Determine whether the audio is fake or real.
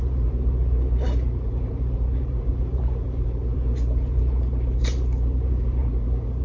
fake